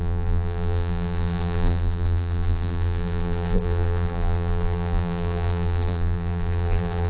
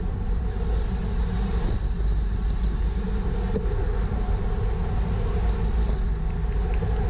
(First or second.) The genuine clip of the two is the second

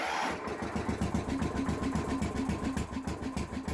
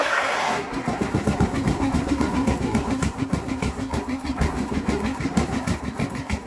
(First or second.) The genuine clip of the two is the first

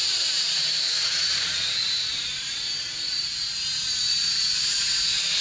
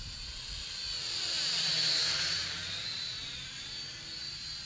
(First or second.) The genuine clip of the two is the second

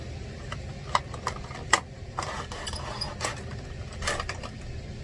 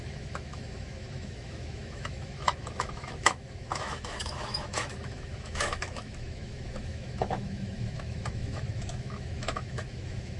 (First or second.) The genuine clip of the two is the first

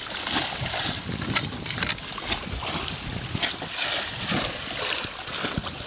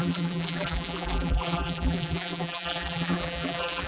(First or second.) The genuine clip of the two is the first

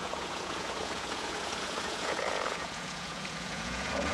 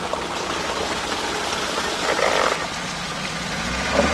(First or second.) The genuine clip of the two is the second